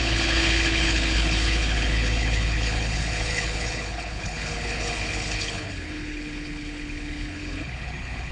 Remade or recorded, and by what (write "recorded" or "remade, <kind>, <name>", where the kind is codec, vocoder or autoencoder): remade, codec, HILCodec